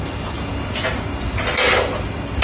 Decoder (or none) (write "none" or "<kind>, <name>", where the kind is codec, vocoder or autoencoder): none